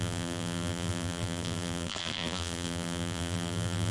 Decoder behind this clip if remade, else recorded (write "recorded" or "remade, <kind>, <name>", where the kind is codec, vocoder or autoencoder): remade, vocoder, BigVGAN v2